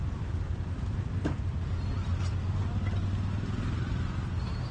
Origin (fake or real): real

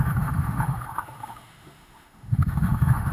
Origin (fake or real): fake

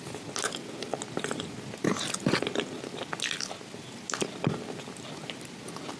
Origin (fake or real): real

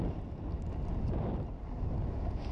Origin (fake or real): real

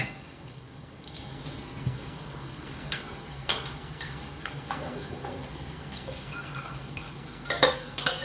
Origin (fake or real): fake